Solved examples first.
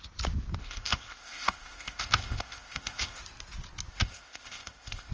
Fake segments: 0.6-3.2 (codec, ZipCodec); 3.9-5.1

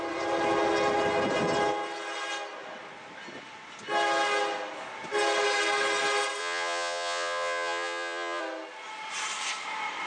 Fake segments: 6.4-8.4 (vocoder, Vocos)

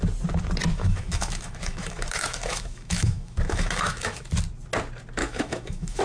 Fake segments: 0.7-4.3 (autoencoder, DAC-VAE); 5.2-6.0

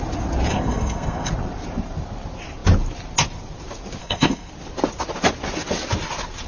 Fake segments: 0.5-1.3 (codec, SNAC); 4.0-4.5

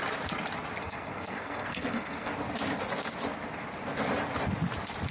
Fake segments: 0.8-2.3 (codec, SNAC)

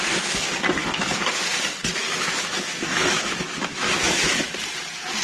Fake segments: 0.8-1.4 (autoencoder, DAC-VAE); 2.0-4.5

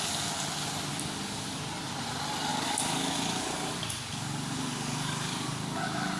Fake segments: 0.9-1.6 (codec, DAC); 2.5-6.2